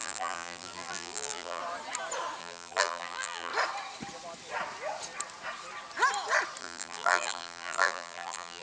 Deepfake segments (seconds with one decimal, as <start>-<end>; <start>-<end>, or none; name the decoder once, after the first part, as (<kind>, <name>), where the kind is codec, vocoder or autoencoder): 0.0-1.6 (vocoder, BigVGAN v2); 2.4-3.5; 6.6-8.6